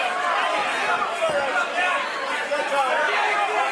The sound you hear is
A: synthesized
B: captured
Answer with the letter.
B